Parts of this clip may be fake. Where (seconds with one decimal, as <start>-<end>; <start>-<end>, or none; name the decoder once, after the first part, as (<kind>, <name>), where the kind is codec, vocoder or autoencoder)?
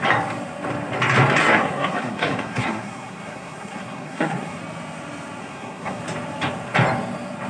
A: 1.4-4.6 (codec, SNAC); 5.4-6.0